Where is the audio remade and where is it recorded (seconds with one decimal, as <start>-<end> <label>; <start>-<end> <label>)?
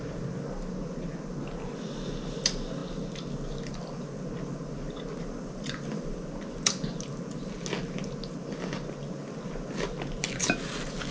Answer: 0.0-11.1 recorded